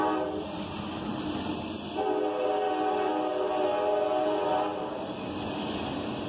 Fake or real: real